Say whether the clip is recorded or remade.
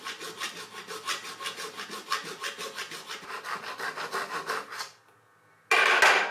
recorded